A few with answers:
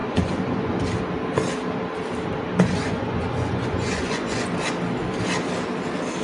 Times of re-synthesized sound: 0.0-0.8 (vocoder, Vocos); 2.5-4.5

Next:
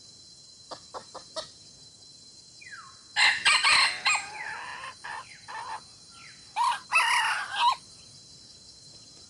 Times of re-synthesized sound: 1.0-1.7 (vocoder, BigVGAN v2)

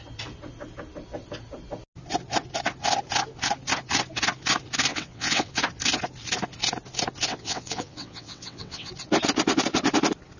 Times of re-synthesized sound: 4.9-5.5 (vocoder, WaveNeXt); 7.3-8.9